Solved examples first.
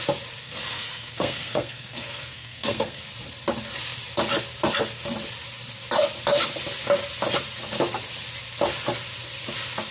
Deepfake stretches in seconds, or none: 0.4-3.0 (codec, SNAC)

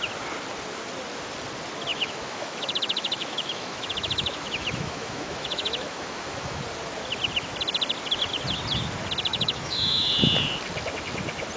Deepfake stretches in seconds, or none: 1.9-6.6 (autoencoder, DAC-VAE); 9.3-10.1

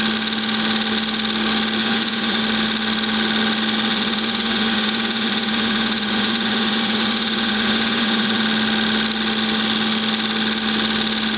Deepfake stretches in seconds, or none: 1.8-2.4 (vocoder, Vocos); 3.9-8.4

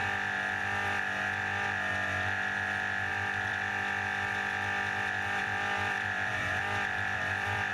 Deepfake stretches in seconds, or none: 3.1-3.7 (vocoder, BigVGAN v2); 5.4-7.7

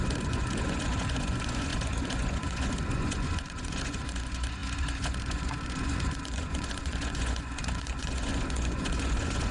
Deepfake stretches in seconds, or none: 0.0-9.5 (vocoder, Vocos)

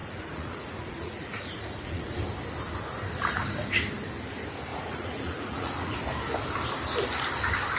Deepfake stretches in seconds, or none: 0.0-2.0 (vocoder, Vocos); 4.7-6.0

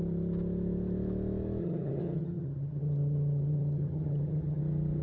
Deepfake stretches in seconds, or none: 1.6-4.6 (vocoder, HiFi-GAN)